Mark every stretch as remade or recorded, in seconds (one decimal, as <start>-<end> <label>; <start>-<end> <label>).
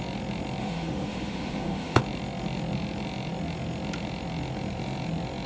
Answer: 0.0-0.6 recorded; 0.6-2.0 remade; 2.0-5.5 recorded